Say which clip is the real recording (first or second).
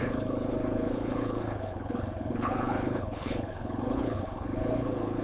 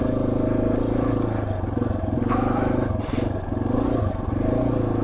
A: second